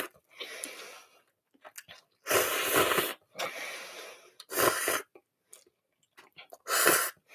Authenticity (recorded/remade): recorded